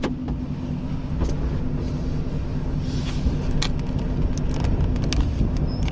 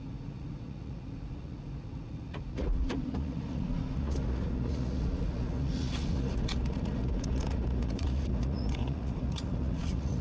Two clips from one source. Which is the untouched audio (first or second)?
first